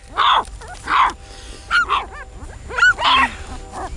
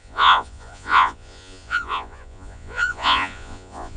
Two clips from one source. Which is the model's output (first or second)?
second